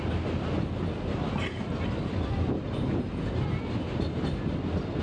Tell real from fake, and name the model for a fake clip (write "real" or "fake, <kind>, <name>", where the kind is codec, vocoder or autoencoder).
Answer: real